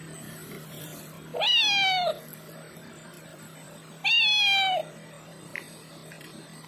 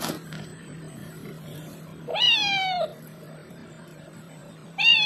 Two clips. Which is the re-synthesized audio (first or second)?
second